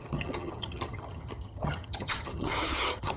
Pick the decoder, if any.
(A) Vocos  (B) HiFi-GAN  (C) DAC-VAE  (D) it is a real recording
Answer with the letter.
B